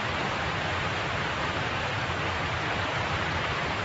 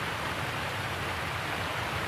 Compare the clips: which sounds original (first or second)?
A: second